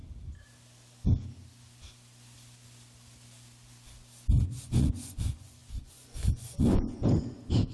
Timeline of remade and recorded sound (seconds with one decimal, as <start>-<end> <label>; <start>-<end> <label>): 0.0-4.6 recorded; 4.6-7.7 remade